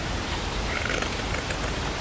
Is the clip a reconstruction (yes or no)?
no